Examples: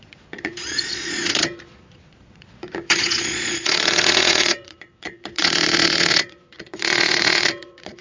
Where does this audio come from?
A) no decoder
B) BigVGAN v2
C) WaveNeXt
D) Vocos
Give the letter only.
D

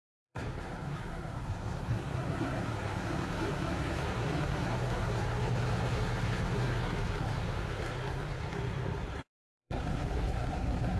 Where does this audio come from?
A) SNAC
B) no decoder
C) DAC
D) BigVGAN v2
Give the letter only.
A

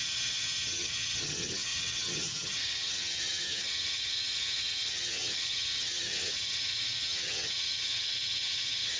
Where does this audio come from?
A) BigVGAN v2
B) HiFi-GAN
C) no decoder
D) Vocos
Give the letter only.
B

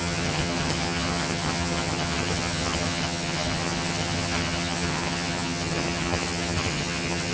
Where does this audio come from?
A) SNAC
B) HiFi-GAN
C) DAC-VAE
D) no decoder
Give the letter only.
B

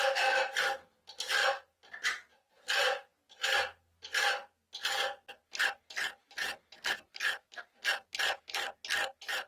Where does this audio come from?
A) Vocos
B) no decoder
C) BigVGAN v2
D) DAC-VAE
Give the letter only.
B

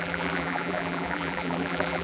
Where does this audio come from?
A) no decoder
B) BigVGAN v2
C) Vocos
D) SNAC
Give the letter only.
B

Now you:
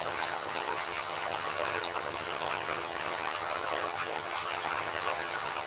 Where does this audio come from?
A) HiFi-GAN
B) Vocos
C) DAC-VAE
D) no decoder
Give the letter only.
A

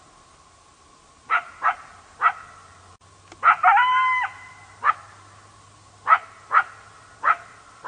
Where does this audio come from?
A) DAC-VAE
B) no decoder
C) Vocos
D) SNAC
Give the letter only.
B